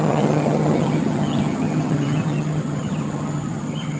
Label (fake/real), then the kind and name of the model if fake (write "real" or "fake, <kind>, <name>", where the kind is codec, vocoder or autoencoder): fake, vocoder, HiFi-GAN